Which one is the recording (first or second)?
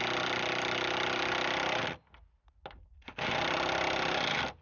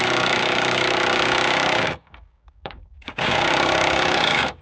first